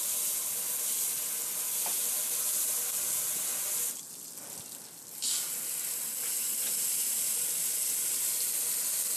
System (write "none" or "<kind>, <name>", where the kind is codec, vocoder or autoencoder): none